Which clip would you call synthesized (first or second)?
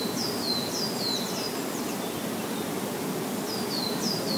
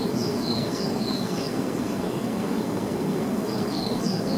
second